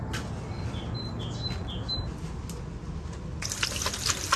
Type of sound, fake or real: real